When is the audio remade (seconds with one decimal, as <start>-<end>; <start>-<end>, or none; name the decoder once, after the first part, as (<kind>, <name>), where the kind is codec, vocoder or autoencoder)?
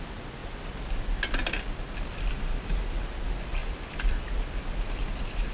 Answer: 3.6-4.6 (vocoder, BigVGAN v2)